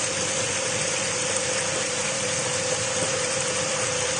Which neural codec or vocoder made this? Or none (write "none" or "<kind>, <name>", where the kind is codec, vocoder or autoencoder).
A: vocoder, BigVGAN v2